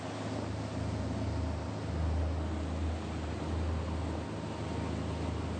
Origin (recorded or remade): recorded